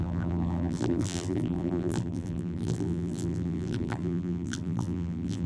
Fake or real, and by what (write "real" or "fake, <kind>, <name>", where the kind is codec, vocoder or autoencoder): fake, vocoder, BigVGAN v2